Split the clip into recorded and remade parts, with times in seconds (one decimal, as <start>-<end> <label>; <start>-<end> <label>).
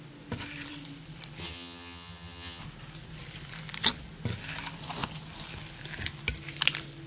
0.0-1.4 recorded; 1.4-2.6 remade; 2.6-7.1 recorded